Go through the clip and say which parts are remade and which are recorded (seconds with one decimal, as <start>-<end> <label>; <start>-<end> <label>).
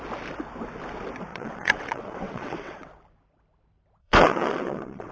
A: 0.0-1.3 recorded; 1.3-2.9 remade; 2.9-4.0 recorded; 4.0-5.1 remade